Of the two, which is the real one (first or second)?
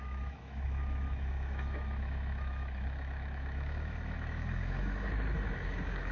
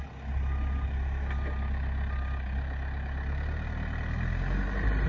second